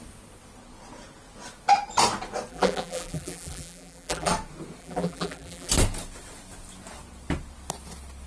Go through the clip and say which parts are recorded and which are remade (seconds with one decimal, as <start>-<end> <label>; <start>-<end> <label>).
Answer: 0.0-2.5 recorded; 2.5-4.3 remade; 4.3-4.8 recorded; 4.8-5.7 remade; 5.7-8.3 recorded

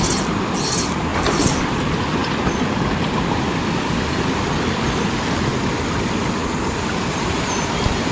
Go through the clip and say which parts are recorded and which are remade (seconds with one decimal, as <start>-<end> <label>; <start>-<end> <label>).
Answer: 0.0-1.1 recorded; 1.1-1.8 remade; 1.8-2.2 recorded; 2.2-4.5 remade; 4.5-6.4 recorded; 6.4-7.4 remade; 7.4-8.1 recorded